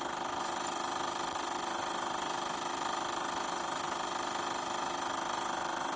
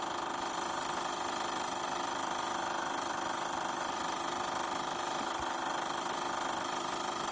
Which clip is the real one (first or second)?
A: first